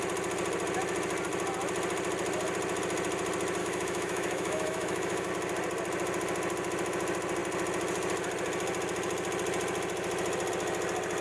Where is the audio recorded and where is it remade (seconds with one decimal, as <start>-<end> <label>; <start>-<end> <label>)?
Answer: 0.0-3.6 recorded; 3.6-5.3 remade; 5.3-11.2 recorded

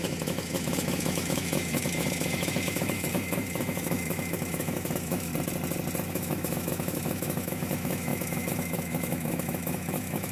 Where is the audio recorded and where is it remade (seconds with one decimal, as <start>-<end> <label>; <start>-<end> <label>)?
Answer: 0.0-5.3 remade; 5.3-6.1 recorded; 6.1-10.3 remade